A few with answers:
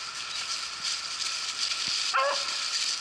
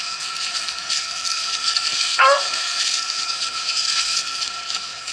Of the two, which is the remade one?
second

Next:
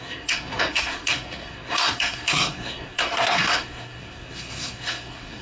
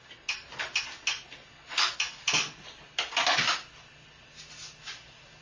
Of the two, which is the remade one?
first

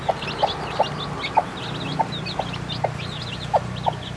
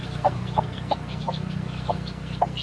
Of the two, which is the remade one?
second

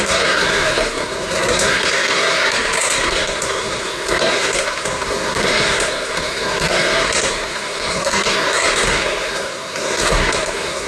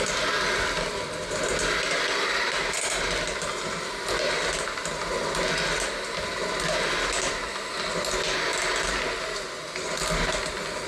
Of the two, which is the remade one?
first